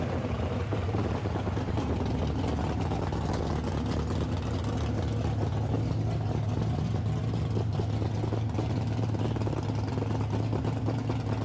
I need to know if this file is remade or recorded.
recorded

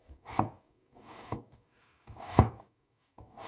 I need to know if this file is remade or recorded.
remade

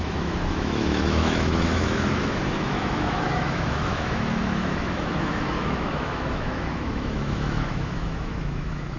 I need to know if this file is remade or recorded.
remade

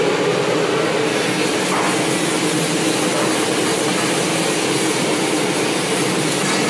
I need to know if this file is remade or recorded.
recorded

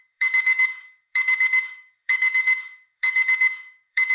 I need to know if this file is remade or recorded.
remade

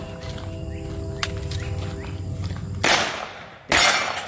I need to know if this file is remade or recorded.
recorded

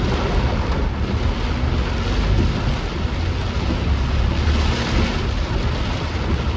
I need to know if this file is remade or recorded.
recorded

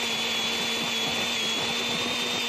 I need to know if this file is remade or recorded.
recorded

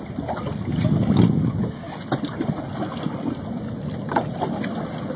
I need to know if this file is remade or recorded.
recorded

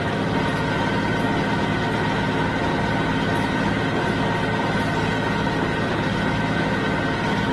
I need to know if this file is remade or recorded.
recorded